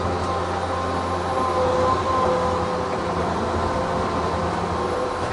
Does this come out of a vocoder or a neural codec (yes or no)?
no